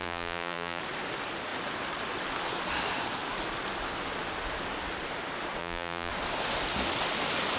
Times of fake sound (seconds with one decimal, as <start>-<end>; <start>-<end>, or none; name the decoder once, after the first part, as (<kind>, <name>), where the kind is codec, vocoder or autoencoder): 0.0-0.8 (vocoder, BigVGAN v2); 5.6-6.1